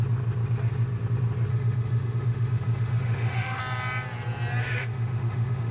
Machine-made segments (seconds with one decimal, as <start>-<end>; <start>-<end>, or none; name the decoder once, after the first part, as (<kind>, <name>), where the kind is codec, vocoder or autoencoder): 1.5-3.6 (autoencoder, DAC-VAE); 4.6-5.7